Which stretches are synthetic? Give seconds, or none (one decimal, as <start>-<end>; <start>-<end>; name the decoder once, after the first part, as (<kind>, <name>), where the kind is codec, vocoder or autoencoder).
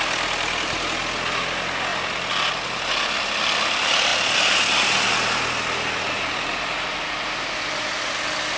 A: none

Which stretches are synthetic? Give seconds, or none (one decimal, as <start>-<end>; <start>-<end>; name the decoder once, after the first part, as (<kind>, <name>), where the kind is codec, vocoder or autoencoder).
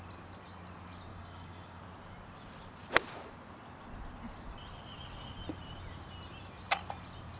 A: 1.1-1.8 (codec, DAC)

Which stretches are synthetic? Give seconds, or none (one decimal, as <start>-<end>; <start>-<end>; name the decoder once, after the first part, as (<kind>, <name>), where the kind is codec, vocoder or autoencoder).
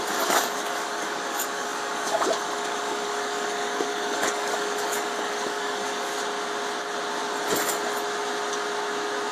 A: 0.0-6.1 (codec, DAC)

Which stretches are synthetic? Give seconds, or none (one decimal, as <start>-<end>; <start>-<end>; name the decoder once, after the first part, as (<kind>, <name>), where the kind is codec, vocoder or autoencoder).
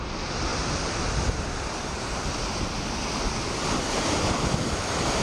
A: none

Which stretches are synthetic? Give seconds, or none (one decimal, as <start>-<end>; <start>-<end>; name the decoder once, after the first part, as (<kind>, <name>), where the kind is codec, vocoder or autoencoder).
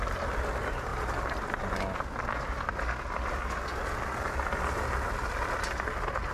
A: none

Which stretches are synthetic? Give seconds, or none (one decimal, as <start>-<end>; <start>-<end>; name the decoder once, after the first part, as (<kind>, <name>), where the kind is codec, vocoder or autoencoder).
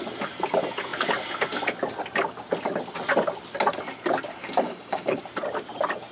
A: 4.4-5.2 (codec, DAC)